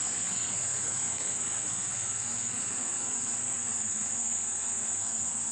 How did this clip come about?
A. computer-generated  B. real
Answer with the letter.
A